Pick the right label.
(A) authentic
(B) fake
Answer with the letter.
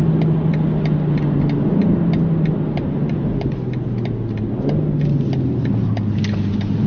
A